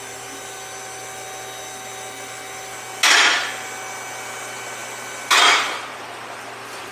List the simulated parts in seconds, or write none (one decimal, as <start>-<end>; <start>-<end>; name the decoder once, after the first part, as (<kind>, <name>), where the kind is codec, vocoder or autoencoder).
none